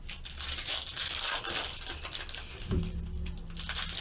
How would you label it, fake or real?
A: real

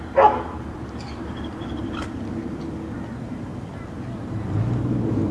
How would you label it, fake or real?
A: real